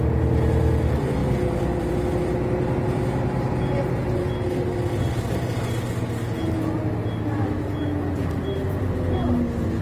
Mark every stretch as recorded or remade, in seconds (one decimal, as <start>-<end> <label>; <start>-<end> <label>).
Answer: 0.0-1.2 recorded; 1.2-1.9 remade; 1.9-9.8 recorded